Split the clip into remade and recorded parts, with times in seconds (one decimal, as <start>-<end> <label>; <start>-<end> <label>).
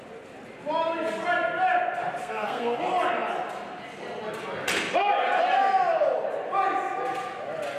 0.0-2.2 recorded; 2.2-2.8 remade; 2.8-7.8 recorded